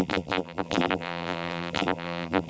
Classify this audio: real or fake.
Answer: fake